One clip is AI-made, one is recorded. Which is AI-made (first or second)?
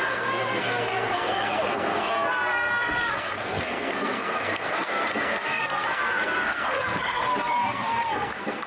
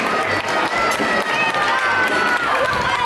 first